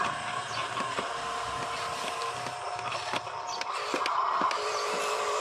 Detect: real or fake real